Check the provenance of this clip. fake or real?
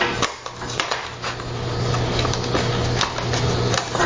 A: real